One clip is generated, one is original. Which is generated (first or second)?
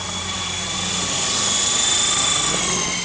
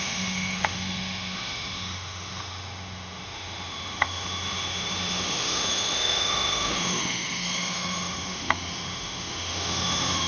second